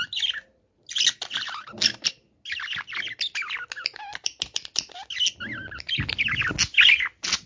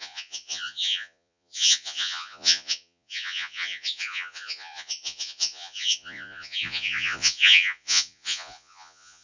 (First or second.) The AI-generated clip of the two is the second